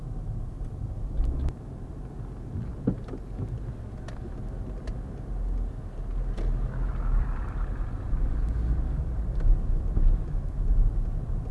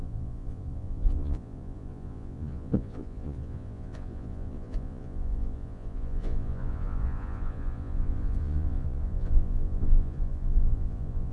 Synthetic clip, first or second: second